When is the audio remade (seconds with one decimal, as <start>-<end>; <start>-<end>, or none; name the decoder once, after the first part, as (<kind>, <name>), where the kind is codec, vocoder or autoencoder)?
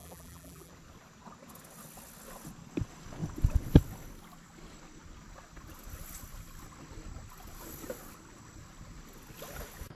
0.0-0.7 (vocoder, BigVGAN v2)